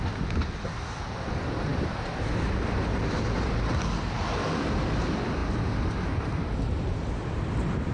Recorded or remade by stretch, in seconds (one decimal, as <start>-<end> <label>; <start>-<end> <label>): 0.0-1.7 recorded; 1.7-3.6 remade; 3.6-7.9 recorded